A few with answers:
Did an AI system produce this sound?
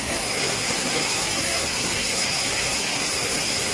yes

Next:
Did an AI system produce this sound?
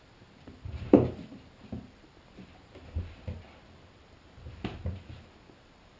yes